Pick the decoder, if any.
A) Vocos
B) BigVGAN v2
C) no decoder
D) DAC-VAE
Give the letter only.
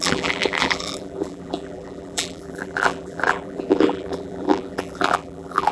B